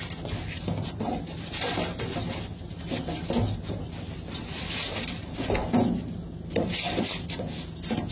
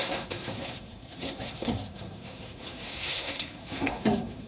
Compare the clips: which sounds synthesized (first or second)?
second